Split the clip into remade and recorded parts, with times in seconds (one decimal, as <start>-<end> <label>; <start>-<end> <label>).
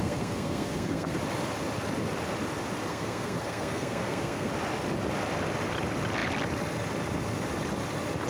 0.0-1.2 remade; 1.2-2.9 recorded; 2.9-4.5 remade; 4.5-8.3 recorded